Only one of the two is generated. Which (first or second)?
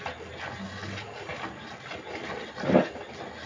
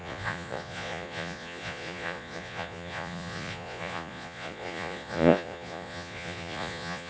second